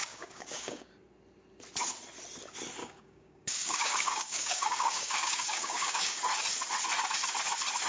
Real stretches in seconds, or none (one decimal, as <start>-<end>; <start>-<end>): 0.9-2.8; 6.2-7.9